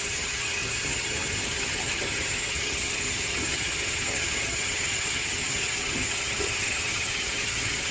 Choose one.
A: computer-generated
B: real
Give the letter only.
A